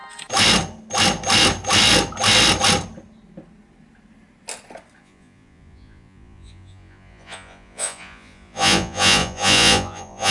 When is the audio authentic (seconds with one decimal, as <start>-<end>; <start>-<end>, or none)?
0.0-5.0